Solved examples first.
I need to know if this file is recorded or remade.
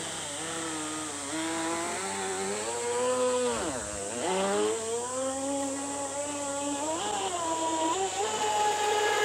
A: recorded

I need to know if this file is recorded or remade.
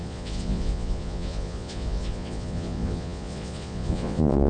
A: remade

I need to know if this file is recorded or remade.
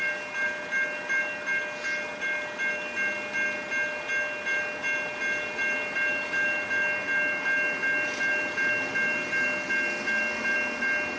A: recorded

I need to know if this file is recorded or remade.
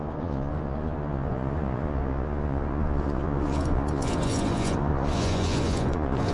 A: remade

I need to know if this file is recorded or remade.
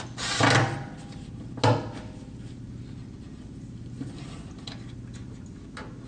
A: recorded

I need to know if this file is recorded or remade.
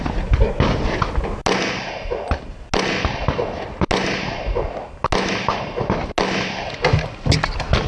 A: recorded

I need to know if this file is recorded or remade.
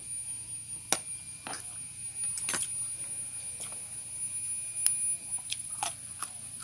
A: recorded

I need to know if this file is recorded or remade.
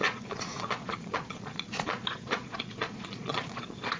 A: remade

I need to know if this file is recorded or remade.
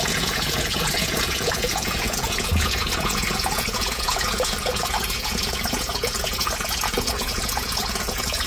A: remade